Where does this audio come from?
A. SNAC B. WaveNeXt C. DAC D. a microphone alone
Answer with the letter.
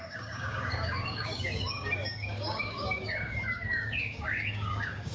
C